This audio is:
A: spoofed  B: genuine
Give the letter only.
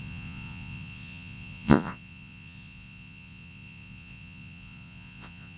A